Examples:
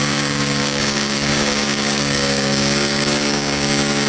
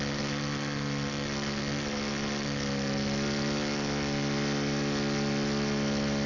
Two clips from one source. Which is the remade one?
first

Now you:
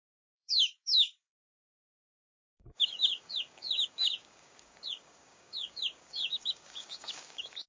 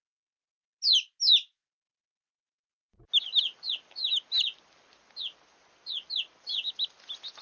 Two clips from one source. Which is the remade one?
first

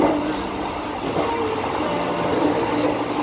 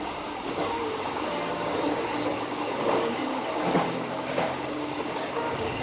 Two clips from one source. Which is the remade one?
second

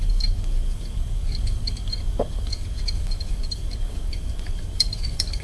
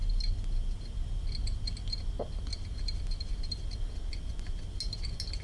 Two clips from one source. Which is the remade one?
first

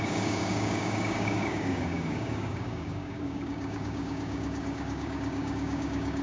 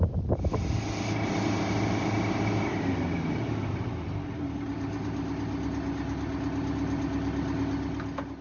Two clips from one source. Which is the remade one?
first